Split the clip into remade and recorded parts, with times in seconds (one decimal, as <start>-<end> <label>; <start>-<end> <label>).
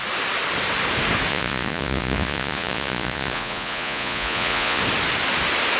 0.0-1.3 recorded; 1.3-4.8 remade; 4.8-5.8 recorded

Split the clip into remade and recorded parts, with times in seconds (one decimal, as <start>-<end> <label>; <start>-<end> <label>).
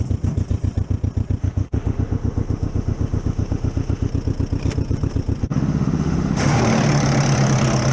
0.0-1.4 recorded; 1.4-4.1 remade; 4.1-5.4 recorded; 5.4-6.6 remade; 6.6-7.9 recorded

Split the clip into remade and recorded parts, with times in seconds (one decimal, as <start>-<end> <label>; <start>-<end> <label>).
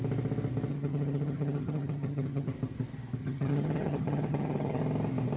0.0-0.7 recorded; 0.7-2.5 remade; 2.5-3.2 recorded; 3.2-4.8 remade; 4.8-5.4 recorded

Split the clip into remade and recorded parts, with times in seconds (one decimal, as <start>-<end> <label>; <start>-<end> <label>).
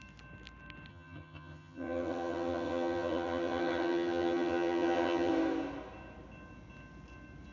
0.0-0.9 recorded; 0.9-5.3 remade; 5.3-7.5 recorded